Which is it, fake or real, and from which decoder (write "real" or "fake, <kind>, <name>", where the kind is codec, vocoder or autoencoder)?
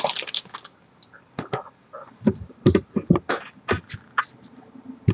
real